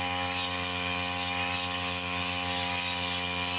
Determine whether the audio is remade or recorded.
recorded